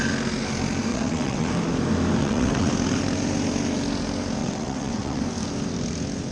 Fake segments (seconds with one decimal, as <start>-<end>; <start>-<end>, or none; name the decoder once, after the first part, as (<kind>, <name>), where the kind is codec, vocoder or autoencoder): 0.9-1.5 (vocoder, WaveNeXt); 2.2-2.7; 4.4-5.2